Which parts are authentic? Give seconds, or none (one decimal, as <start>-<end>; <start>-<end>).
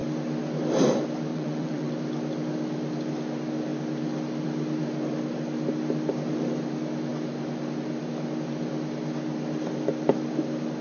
0.0-1.3; 1.9-10.8